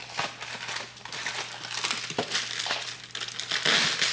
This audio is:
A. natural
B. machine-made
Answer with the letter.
A